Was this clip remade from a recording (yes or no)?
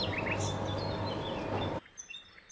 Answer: no